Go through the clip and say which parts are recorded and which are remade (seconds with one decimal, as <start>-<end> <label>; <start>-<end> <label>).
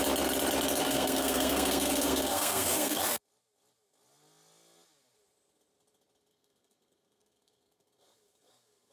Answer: 0.0-0.8 recorded; 0.8-3.0 remade; 3.0-6.3 recorded; 6.3-8.9 remade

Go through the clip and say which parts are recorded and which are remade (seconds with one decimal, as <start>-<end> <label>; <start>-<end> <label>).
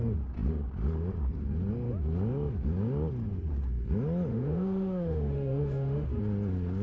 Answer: 0.0-4.3 recorded; 4.3-6.2 remade; 6.2-6.8 recorded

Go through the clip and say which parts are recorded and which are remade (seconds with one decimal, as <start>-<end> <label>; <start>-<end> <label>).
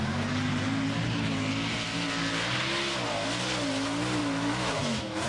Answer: 0.0-4.2 recorded; 4.2-5.3 remade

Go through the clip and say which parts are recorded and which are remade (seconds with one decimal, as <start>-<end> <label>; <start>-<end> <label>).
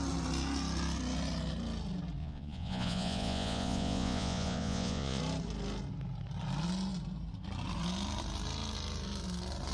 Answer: 0.0-2.2 recorded; 2.2-5.2 remade; 5.2-9.7 recorded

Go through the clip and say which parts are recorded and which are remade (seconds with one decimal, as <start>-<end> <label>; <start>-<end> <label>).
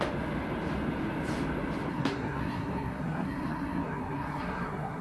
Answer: 0.0-1.9 recorded; 1.9-5.0 remade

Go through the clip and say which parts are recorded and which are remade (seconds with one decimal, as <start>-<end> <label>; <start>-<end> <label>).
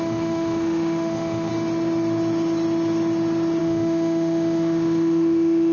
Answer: 0.0-1.5 remade; 1.5-3.6 recorded; 3.6-5.7 remade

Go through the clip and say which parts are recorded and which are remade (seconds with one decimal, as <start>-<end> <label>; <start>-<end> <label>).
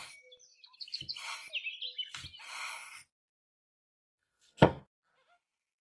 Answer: 0.0-3.2 recorded; 3.2-4.8 remade; 4.8-5.8 recorded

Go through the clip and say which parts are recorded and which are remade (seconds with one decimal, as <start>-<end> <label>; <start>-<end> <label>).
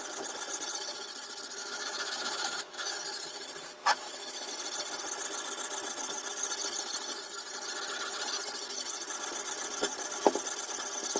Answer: 0.0-1.6 recorded; 1.6-3.0 remade; 3.0-3.8 recorded; 3.8-4.5 remade; 4.5-11.2 recorded